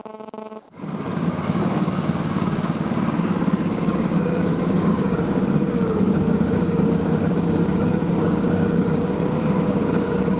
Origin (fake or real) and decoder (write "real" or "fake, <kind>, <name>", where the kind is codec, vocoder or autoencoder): fake, codec, DAC